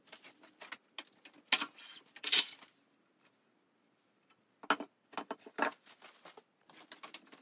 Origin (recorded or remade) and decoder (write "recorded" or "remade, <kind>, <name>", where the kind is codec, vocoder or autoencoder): recorded